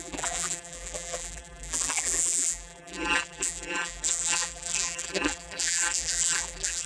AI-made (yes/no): yes